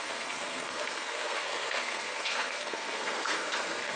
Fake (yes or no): yes